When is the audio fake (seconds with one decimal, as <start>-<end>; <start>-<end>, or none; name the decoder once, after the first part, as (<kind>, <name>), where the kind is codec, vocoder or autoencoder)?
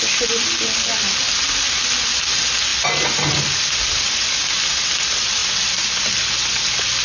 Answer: none